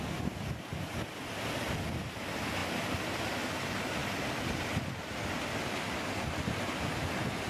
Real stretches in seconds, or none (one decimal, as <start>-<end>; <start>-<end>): 0.0-7.5